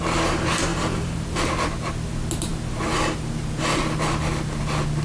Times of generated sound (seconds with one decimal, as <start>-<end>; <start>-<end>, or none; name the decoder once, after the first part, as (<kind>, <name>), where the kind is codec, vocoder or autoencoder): 0.7-1.4 (vocoder, BigVGAN v2)